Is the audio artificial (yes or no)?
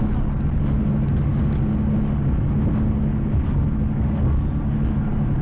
no